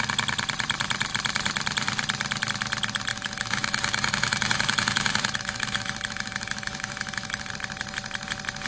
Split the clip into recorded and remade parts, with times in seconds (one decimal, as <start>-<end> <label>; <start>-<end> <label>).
0.0-3.1 recorded; 3.1-7.5 remade; 7.5-8.7 recorded